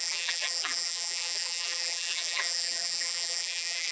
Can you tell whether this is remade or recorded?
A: remade